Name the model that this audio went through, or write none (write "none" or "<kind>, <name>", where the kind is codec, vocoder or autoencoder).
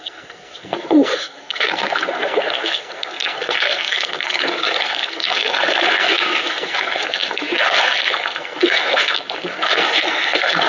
codec, SNAC